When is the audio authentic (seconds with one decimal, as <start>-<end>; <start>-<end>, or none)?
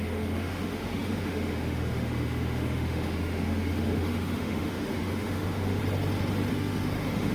5.8-6.5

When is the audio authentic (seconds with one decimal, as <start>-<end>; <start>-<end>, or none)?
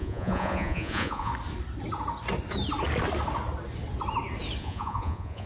1.3-4.6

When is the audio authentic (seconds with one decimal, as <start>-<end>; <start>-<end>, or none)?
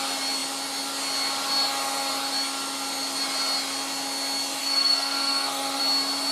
0.0-4.6; 5.8-6.3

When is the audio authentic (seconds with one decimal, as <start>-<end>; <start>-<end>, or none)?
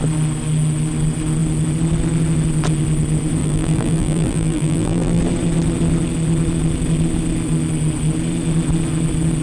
0.0-3.4; 5.2-9.4